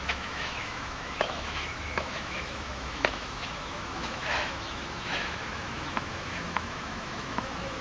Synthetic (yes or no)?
yes